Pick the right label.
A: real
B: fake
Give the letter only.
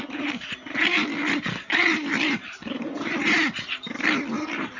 A